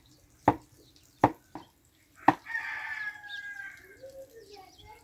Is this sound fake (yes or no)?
no